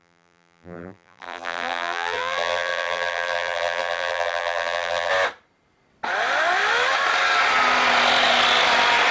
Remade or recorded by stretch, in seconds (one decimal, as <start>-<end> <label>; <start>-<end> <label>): 0.0-5.1 remade; 5.1-9.1 recorded